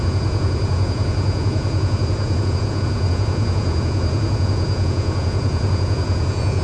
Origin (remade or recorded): remade